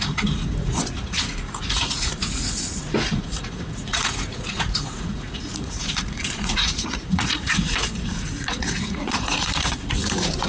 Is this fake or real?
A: fake